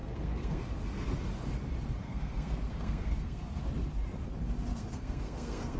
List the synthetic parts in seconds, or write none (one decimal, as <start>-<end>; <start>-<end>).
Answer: 0.0-0.6; 2.0-3.6; 4.7-5.8